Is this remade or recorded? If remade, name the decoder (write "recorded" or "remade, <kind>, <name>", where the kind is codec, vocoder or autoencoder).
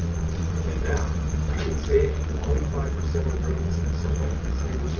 remade, vocoder, Vocos